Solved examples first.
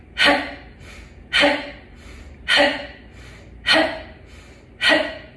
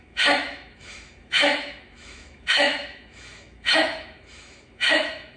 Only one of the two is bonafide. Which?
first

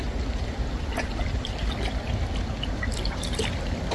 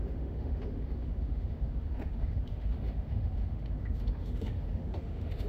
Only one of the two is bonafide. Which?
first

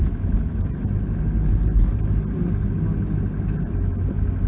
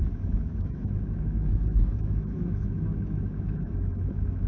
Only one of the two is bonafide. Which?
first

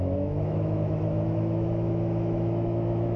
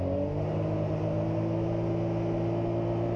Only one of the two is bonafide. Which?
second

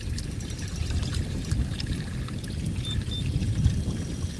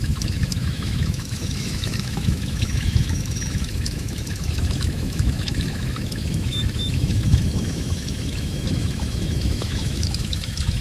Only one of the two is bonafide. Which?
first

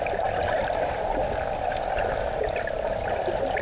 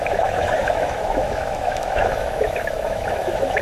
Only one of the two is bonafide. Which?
first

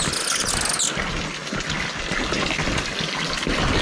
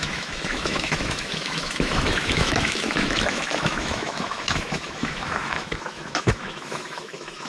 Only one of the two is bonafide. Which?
first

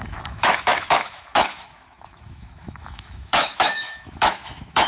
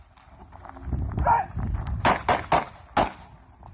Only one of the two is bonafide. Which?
second